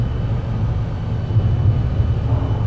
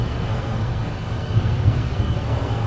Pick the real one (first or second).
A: first